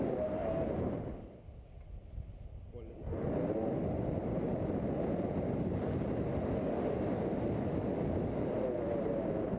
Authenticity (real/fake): real